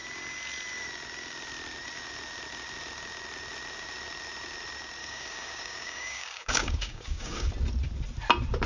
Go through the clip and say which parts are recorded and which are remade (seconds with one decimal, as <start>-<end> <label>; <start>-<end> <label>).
0.0-5.0 recorded; 5.0-7.5 remade; 7.5-8.7 recorded